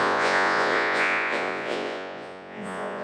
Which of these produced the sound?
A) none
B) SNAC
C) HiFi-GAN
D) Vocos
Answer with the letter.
D